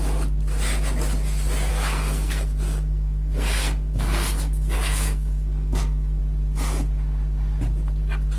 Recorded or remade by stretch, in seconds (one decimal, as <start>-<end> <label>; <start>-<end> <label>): 0.0-1.7 recorded; 1.7-6.2 remade; 6.2-8.4 recorded